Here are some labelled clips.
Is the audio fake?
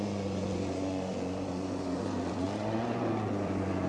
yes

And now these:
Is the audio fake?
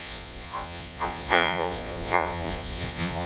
yes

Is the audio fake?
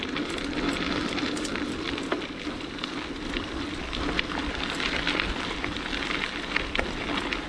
no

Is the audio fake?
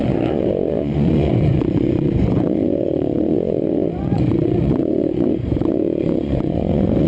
yes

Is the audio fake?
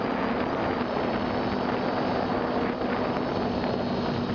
no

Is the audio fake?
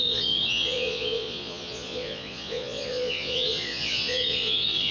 yes